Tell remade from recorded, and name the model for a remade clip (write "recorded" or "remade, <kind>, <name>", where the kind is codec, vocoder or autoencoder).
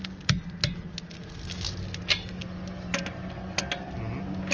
recorded